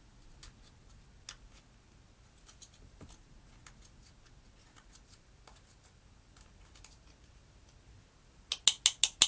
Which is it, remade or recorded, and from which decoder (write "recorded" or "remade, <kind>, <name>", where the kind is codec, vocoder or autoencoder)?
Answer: recorded